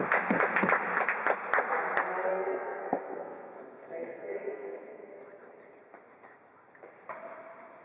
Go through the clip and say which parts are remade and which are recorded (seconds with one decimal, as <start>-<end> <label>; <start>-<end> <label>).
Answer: 0.0-2.3 recorded; 2.3-5.1 remade; 5.1-7.8 recorded